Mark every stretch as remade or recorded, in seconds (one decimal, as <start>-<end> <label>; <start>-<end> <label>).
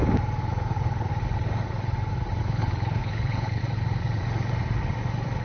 0.0-0.5 recorded; 0.5-1.1 remade; 1.1-2.4 recorded; 2.4-3.6 remade; 3.6-5.4 recorded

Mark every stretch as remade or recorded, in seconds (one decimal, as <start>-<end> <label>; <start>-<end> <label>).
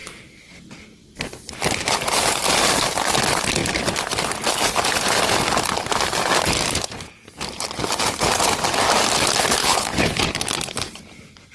0.0-9.6 recorded; 9.6-10.2 remade; 10.2-11.5 recorded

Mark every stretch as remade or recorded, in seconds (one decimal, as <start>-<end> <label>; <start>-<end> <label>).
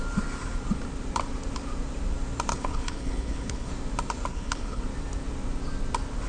0.0-2.5 recorded; 2.5-3.7 remade; 3.7-4.3 recorded; 4.3-4.8 remade; 4.8-6.3 recorded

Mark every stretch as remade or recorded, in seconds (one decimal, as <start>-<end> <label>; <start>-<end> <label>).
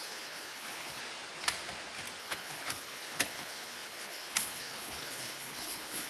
0.0-1.0 remade; 1.0-2.2 recorded; 2.2-6.1 remade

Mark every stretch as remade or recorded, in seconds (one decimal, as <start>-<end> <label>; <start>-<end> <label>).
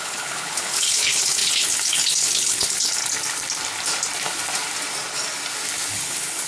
0.0-3.0 remade; 3.0-5.9 recorded; 5.9-6.5 remade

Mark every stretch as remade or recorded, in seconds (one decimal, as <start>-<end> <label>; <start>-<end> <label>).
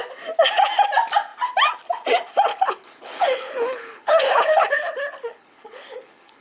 0.0-2.5 recorded; 2.5-6.4 remade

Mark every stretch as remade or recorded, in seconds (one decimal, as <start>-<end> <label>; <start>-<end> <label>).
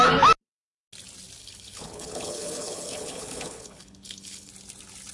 0.0-1.4 recorded; 1.4-4.5 remade; 4.5-5.1 recorded